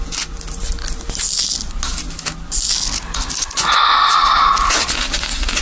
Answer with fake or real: real